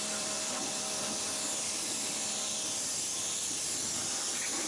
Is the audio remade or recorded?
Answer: remade